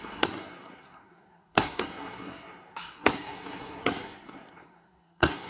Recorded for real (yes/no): no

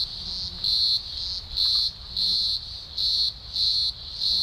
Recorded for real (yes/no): yes